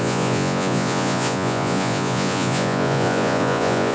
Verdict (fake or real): fake